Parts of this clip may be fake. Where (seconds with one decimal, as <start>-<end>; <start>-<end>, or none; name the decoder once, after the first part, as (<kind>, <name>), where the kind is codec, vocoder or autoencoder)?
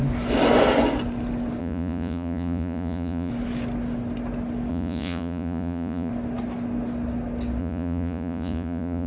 1.6-3.3 (vocoder, Vocos); 4.7-6.1; 7.6-9.1